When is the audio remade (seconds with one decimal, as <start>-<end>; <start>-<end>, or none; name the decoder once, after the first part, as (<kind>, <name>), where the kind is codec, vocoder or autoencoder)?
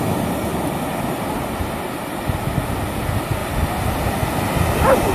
none